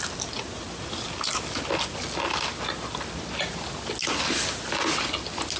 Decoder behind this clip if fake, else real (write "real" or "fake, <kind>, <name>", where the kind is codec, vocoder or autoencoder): real